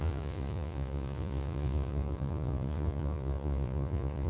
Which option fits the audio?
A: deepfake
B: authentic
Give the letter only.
A